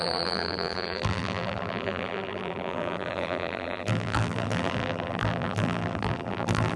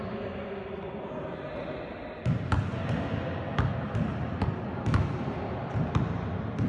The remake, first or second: first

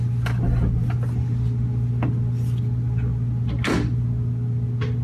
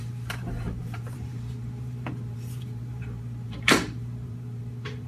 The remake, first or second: second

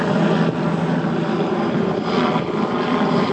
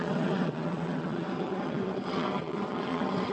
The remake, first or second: second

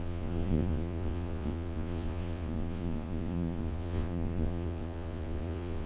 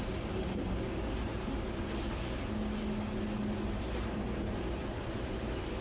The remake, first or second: first